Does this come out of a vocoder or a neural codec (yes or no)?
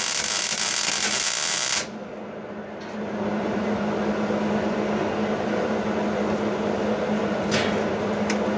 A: no